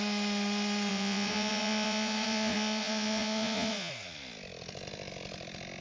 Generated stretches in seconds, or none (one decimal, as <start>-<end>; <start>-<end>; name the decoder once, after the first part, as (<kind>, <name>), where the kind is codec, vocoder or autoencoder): 0.9-3.9 (vocoder, Vocos)